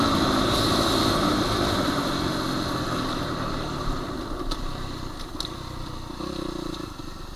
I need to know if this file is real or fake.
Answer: real